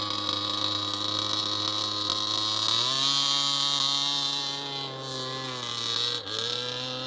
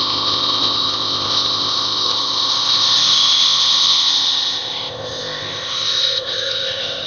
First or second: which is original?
first